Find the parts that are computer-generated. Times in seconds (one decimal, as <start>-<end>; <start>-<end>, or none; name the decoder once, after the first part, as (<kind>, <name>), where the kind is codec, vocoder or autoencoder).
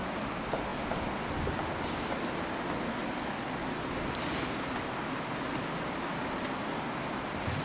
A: none